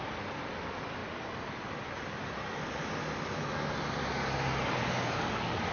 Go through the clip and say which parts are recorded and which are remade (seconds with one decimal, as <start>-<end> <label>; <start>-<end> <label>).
0.0-4.8 recorded; 4.8-5.7 remade